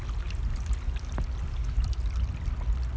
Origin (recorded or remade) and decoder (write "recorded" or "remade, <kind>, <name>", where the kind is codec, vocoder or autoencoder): recorded